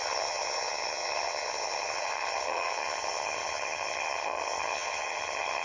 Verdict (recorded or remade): remade